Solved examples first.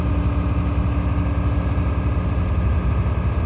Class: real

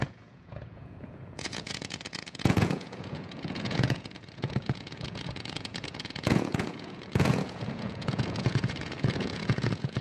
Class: fake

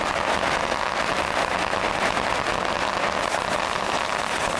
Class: real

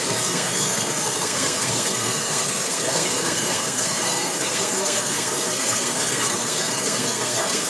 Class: fake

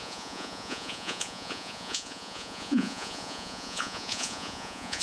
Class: fake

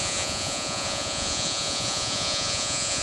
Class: fake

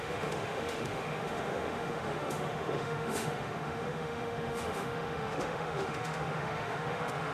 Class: fake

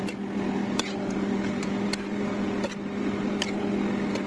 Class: real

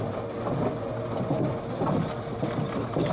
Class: real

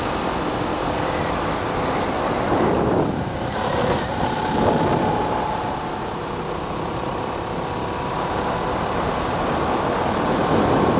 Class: real